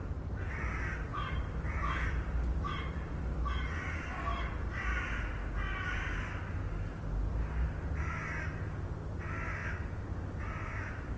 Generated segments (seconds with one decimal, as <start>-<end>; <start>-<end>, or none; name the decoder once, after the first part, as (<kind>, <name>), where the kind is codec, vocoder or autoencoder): 1.1-3.4 (vocoder, BigVGAN v2); 9.6-11.2